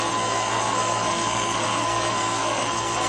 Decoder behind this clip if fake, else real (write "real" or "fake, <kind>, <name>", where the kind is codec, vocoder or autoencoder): fake, codec, SNAC